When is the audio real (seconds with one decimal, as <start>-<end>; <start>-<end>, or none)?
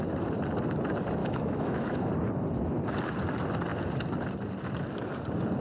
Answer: 0.0-1.2; 2.1-5.6